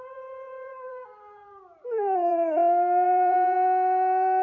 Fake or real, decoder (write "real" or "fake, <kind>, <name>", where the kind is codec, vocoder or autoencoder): fake, vocoder, BigVGAN v2